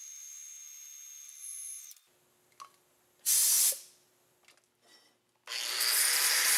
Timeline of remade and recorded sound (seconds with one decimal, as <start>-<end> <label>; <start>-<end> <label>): 0.0-6.6 recorded